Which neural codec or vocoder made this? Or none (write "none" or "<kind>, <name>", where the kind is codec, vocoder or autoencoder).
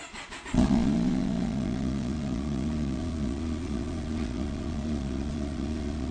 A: vocoder, Vocos